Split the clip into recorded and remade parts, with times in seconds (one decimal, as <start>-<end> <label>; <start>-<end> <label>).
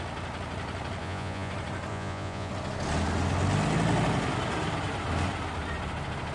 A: 0.0-1.0 recorded; 1.0-1.5 remade; 1.5-1.9 recorded; 1.9-2.5 remade; 2.5-6.3 recorded